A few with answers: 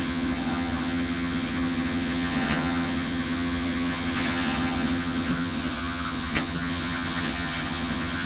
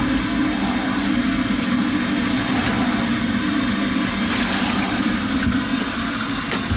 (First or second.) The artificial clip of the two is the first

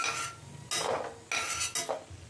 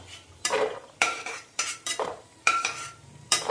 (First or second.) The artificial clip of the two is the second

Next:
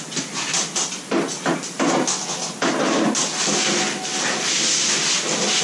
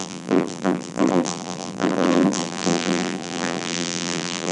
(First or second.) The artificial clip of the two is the second